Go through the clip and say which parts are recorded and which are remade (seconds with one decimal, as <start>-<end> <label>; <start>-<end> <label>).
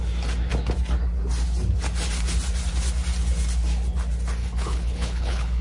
0.0-4.4 recorded; 4.4-5.6 remade